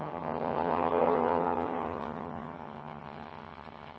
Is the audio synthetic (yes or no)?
yes